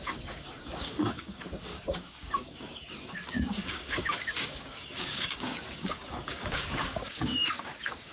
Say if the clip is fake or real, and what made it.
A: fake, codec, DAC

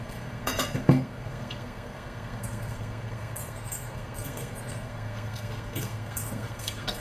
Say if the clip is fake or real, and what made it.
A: fake, codec, SNAC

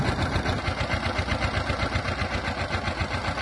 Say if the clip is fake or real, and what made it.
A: real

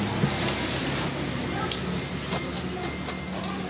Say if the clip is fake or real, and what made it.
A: real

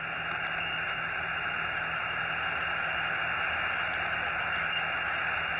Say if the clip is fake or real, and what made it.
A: real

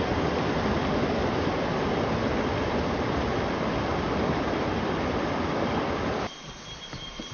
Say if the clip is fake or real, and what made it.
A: real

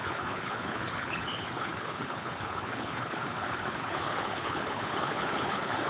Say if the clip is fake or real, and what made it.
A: fake, codec, HILCodec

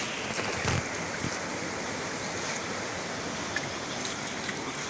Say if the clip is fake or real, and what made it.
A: real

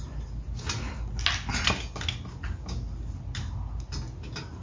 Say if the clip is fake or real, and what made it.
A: real